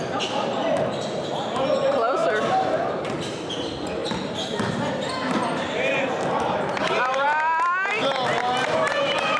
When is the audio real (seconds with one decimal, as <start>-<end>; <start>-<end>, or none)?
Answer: 0.0-4.0; 4.5-9.4